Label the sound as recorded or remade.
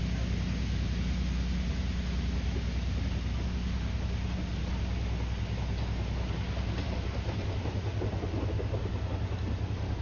recorded